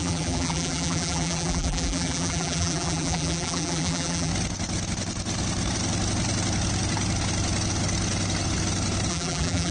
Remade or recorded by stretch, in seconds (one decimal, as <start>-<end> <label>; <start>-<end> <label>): 0.0-4.3 remade; 4.3-9.1 recorded; 9.1-9.7 remade